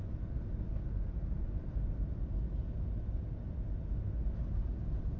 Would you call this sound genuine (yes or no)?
yes